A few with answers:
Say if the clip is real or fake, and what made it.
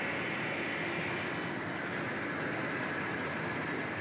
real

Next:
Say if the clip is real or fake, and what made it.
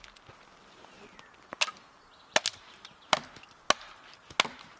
real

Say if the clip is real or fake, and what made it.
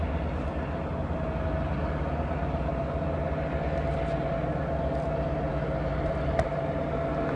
real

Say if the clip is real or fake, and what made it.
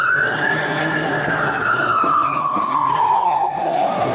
fake, codec, SNAC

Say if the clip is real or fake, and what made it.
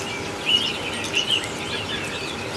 real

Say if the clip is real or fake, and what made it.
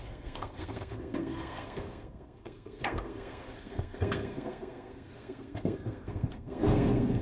fake, codec, SNAC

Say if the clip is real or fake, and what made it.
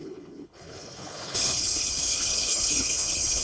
fake, codec, HILCodec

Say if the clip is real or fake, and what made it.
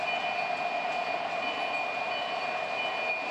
real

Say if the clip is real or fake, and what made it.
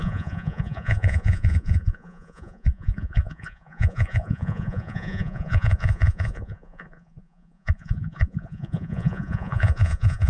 fake, vocoder, Vocos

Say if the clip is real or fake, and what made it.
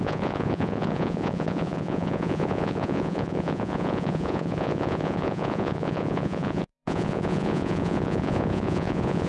fake, vocoder, Vocos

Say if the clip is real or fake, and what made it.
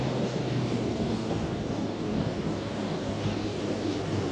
fake, codec, DAC